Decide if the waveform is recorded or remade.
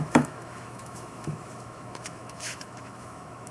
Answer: remade